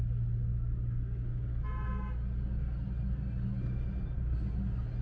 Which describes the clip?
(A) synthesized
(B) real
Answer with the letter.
B